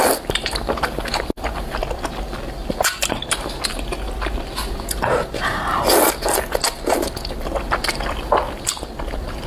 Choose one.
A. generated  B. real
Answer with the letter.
B